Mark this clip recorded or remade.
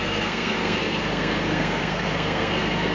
remade